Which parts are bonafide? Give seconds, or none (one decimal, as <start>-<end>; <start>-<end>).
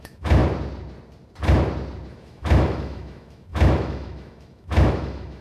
0.4-2.1